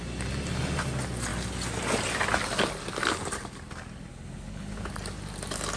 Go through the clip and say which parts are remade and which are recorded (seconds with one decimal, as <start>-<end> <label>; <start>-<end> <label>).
0.0-4.1 recorded; 4.1-4.9 remade; 4.9-5.8 recorded